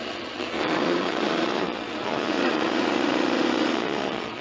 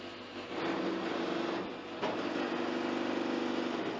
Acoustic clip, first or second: second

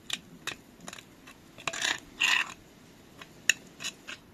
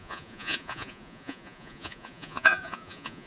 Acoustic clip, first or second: first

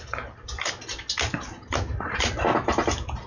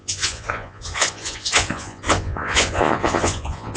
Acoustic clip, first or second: first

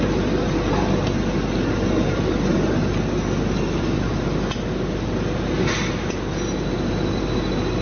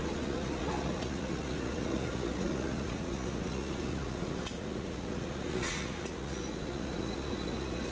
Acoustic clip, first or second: first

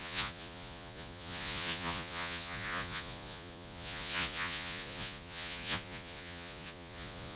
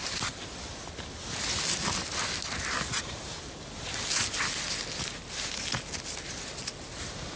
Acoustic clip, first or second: second